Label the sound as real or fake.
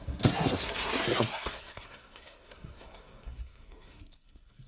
fake